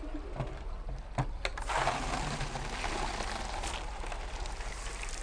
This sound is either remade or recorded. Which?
recorded